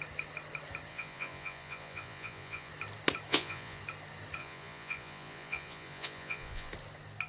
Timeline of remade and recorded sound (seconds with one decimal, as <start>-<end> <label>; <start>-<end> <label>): 0.0-0.9 recorded; 0.9-2.7 remade; 2.7-3.3 recorded; 3.3-3.8 remade; 3.8-4.4 recorded; 4.4-6.7 remade; 6.7-7.3 recorded